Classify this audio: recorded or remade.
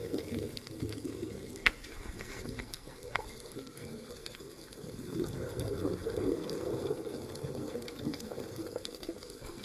remade